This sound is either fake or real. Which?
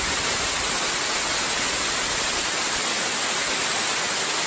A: real